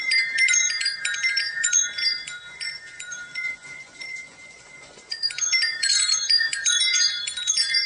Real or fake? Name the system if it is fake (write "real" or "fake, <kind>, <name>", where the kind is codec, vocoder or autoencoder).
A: fake, vocoder, Vocos